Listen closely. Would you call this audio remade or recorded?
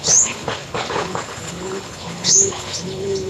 remade